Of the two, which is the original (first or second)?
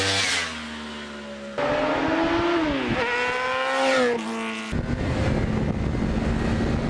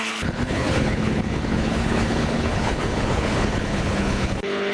first